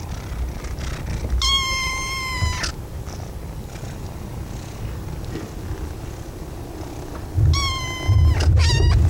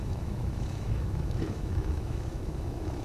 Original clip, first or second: first